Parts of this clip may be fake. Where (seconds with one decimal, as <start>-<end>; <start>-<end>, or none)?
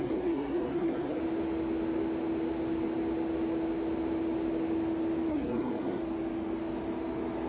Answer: 0.0-1.2; 5.3-6.0